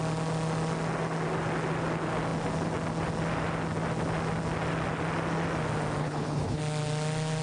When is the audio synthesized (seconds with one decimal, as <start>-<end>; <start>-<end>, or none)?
6.0-6.6